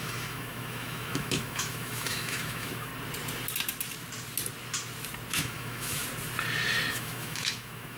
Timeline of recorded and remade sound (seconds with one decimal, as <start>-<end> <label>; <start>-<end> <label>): 0.0-2.9 remade; 2.9-5.3 recorded; 5.3-6.0 remade; 6.0-6.9 recorded; 6.9-8.0 remade